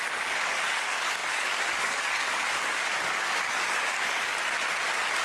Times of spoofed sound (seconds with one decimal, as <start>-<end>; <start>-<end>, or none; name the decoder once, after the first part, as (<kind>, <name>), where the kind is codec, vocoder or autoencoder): 0.0-4.3 (codec, DAC)